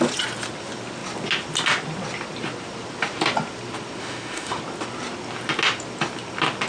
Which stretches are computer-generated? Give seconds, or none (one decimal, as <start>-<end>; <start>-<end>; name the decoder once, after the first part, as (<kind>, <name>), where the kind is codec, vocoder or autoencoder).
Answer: 4.0-4.6 (autoencoder, DAC-VAE)